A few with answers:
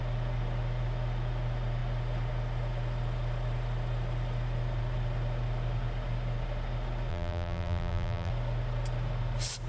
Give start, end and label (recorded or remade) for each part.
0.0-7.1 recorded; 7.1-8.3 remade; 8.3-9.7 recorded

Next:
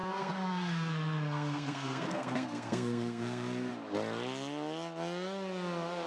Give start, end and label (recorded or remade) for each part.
0.0-3.7 remade; 3.7-6.1 recorded

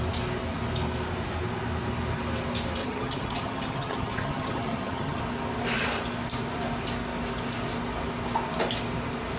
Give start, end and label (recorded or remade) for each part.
0.0-2.8 recorded; 2.8-5.2 remade; 5.2-9.4 recorded

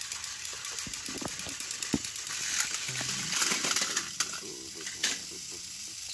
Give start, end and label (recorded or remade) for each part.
0.0-6.1 recorded

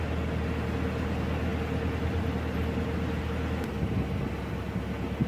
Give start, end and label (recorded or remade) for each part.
0.0-5.3 recorded

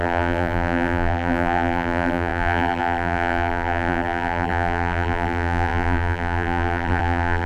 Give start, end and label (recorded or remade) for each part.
0.0-7.5 remade

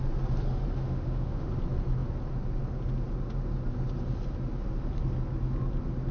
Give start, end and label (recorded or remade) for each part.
0.0-0.8 recorded; 0.8-1.5 remade; 1.5-6.1 recorded

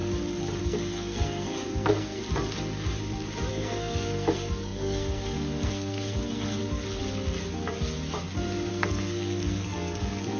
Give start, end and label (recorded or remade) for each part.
0.0-0.6 recorded; 0.6-2.2 remade; 2.2-3.5 recorded; 3.5-6.6 remade; 6.6-8.7 recorded; 8.7-10.4 remade